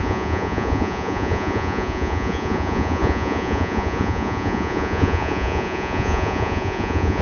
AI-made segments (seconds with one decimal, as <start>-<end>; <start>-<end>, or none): 0.0-7.2